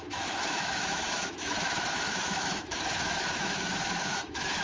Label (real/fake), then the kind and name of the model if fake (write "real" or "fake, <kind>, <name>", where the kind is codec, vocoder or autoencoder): fake, autoencoder, DAC-VAE